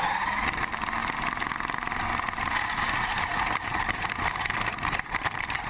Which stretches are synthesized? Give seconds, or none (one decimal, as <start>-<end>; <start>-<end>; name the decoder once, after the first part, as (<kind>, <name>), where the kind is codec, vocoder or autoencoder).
none